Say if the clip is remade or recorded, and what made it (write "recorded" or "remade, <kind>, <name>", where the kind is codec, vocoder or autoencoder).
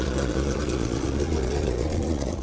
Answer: remade, vocoder, Vocos